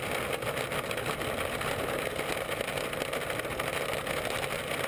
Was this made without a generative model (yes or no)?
yes